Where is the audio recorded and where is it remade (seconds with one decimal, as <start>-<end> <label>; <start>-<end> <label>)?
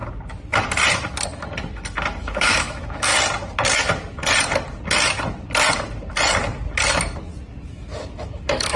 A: 0.0-2.2 recorded; 2.2-3.1 remade; 3.1-7.7 recorded; 7.7-8.8 remade